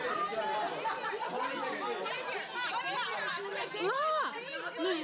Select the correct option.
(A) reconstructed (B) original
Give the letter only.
B